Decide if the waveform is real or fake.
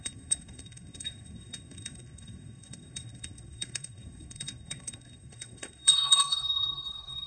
fake